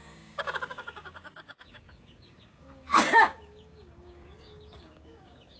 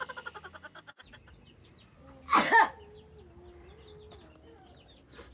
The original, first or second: second